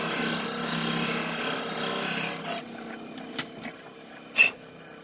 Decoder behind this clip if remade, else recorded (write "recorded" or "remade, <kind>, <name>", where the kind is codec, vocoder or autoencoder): recorded